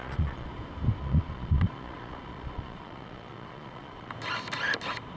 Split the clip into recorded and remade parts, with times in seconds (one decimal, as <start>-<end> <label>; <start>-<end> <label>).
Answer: 0.0-0.5 remade; 0.5-1.0 recorded; 1.0-4.1 remade; 4.1-5.2 recorded